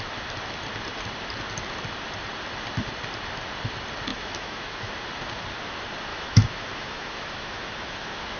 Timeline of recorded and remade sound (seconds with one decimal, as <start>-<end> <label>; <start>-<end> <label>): 0.0-4.1 recorded; 4.1-4.9 remade; 4.9-6.1 recorded; 6.1-8.4 remade